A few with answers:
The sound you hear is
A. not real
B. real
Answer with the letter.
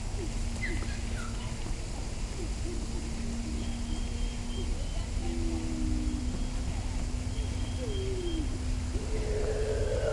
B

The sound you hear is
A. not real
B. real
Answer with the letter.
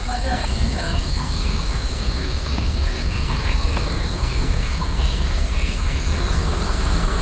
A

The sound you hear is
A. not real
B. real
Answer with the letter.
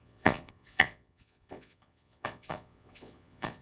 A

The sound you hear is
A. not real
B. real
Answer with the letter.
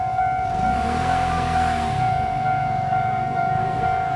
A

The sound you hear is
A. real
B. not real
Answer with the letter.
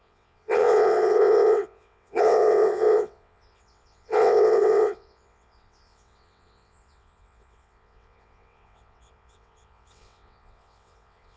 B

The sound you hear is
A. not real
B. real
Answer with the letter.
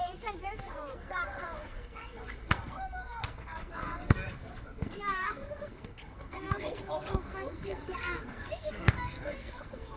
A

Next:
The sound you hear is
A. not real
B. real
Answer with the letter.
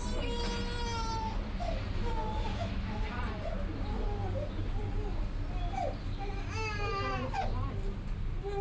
B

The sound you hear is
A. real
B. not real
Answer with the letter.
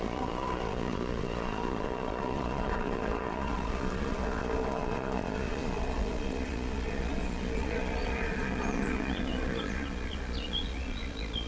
B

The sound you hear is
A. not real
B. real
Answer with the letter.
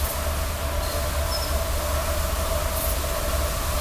B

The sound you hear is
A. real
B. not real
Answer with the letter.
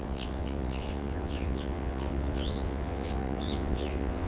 B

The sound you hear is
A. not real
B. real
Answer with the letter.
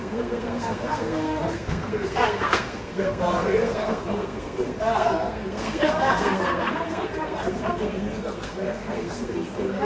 A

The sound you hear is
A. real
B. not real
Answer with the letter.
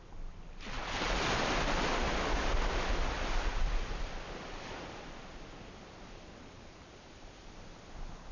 A